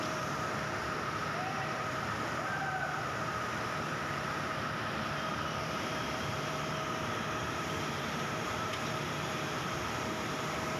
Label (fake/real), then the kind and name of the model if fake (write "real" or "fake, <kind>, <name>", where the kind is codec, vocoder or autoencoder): fake, vocoder, BigVGAN v2